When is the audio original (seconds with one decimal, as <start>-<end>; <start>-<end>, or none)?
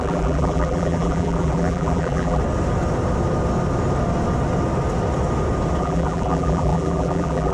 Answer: 2.4-5.8